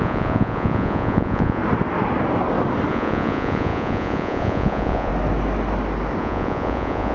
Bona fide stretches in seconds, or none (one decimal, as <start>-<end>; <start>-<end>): 1.6-2.9; 5.1-6.2